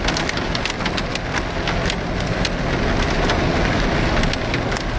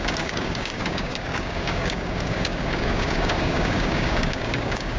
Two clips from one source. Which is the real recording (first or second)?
first